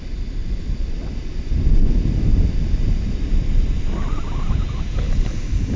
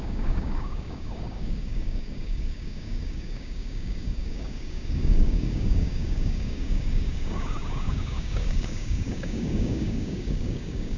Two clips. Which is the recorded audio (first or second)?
first